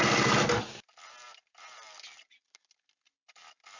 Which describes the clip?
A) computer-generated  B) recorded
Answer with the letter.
B